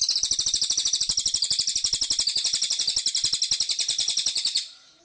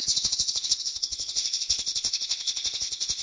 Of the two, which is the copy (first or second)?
second